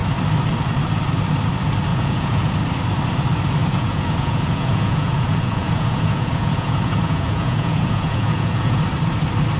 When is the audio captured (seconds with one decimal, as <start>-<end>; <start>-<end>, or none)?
0.0-1.9; 2.5-3.6; 8.8-9.6